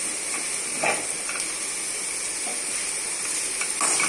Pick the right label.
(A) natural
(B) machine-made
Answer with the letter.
A